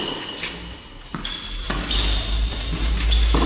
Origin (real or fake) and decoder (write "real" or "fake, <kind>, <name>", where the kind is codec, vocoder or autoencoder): real